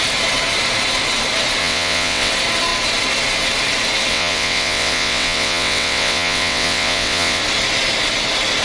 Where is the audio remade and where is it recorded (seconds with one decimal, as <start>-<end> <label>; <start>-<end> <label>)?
0.0-1.6 recorded; 1.6-2.3 remade; 2.3-4.1 recorded; 4.1-7.4 remade; 7.4-8.6 recorded